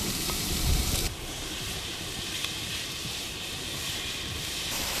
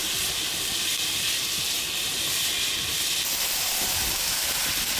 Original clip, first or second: second